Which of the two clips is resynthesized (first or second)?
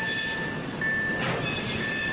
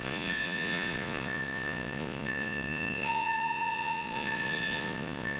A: second